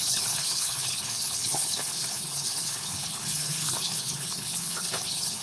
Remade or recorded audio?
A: remade